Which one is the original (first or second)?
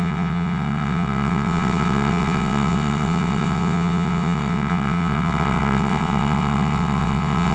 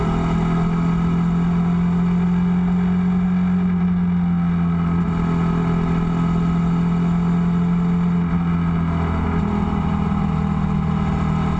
second